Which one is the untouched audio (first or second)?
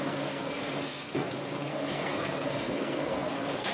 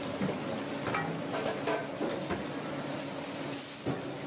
second